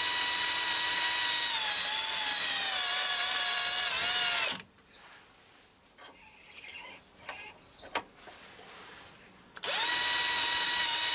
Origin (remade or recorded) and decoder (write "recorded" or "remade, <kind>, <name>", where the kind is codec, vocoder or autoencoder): recorded